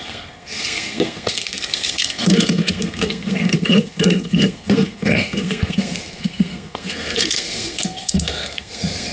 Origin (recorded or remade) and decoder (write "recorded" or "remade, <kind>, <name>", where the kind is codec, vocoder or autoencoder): remade, codec, SNAC